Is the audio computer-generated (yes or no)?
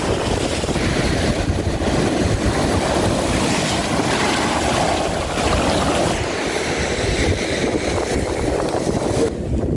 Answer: no